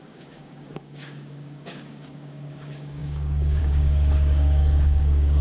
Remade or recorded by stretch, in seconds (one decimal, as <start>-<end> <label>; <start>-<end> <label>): 0.0-5.4 remade